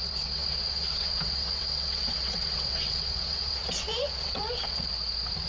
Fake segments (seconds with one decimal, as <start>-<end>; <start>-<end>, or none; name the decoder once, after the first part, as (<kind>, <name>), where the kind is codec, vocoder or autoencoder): 0.0-4.9 (vocoder, WaveNeXt)